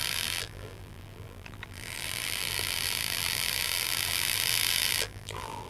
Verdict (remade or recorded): remade